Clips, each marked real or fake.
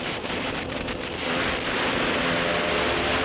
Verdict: real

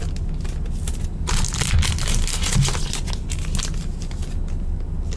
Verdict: real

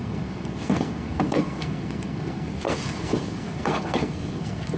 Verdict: fake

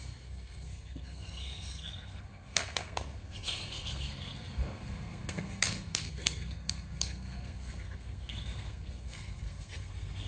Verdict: fake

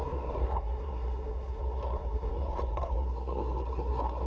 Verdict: fake